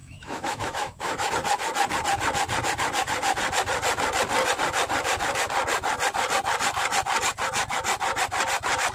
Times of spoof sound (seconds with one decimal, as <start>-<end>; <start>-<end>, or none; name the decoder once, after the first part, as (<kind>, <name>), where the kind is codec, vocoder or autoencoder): 0.0-1.3 (autoencoder, DAC-VAE)